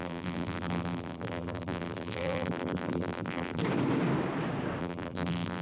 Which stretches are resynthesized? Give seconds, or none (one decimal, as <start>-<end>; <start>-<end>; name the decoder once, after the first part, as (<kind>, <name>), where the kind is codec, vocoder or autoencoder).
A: 0.0-3.6 (vocoder, BigVGAN v2); 4.8-5.6